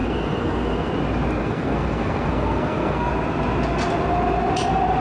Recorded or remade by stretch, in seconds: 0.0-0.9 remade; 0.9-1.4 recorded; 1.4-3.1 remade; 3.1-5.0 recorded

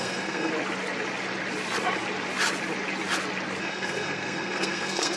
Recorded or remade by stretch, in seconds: 0.0-0.5 remade; 0.5-3.6 recorded; 3.6-5.2 remade